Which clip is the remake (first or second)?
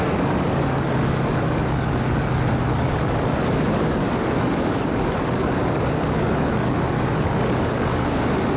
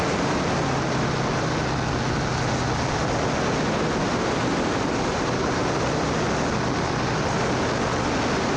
first